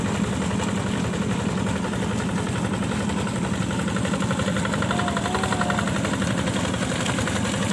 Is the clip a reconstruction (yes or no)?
no